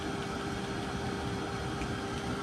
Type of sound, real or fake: real